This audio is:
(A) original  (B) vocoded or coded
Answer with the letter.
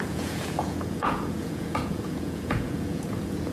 B